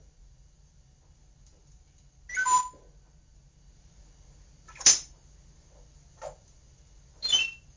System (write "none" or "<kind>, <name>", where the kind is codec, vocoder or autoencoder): none